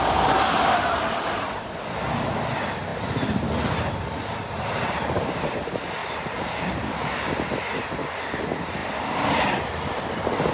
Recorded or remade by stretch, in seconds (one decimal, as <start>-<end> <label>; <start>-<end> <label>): 0.0-6.0 recorded; 6.0-7.5 remade; 7.5-10.5 recorded